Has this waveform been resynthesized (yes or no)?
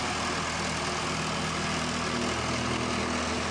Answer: no